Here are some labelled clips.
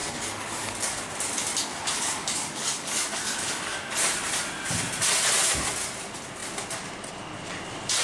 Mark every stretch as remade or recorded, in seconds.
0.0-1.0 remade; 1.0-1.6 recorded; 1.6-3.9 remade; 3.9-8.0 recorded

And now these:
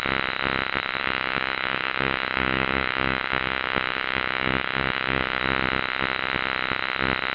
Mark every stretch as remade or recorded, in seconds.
0.0-1.0 recorded; 1.0-5.4 remade; 5.4-7.3 recorded

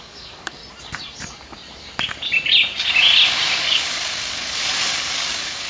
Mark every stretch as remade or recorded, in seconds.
0.0-0.6 remade; 0.6-3.6 recorded; 3.6-5.7 remade

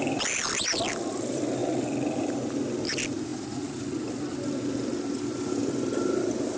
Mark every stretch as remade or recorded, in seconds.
0.0-6.6 recorded

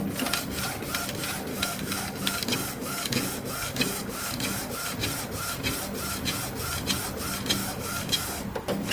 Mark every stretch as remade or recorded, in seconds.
0.0-1.5 recorded; 1.5-4.7 remade; 4.7-7.6 recorded; 7.6-8.4 remade; 8.4-8.9 recorded

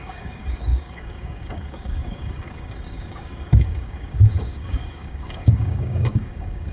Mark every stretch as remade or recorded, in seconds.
0.0-6.7 remade

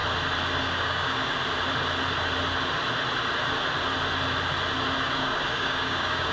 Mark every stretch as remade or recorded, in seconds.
0.0-0.6 recorded; 0.6-1.2 remade; 1.2-5.0 recorded; 5.0-6.3 remade